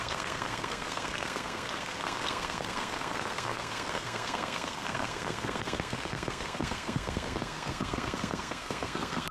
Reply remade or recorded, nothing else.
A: remade